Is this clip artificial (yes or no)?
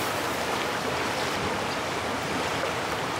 no